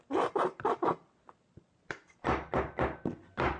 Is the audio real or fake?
real